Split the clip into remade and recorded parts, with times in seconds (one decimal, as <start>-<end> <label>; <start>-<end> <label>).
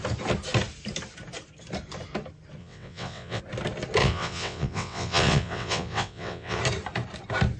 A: 0.0-2.6 recorded; 2.6-3.4 remade; 3.4-4.0 recorded; 4.0-6.6 remade; 6.6-7.6 recorded